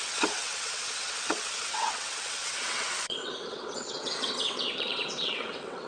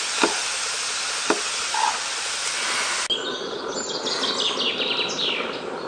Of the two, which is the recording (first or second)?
second